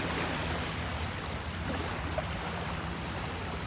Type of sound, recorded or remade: remade